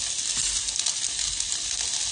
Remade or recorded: recorded